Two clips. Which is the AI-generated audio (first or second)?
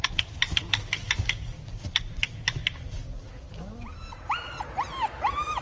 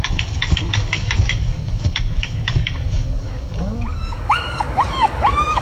second